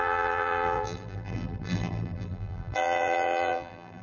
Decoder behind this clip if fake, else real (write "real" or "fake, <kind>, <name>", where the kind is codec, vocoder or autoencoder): fake, vocoder, BigVGAN v2